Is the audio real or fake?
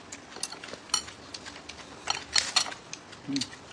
real